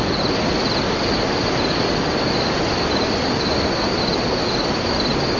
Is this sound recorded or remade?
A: recorded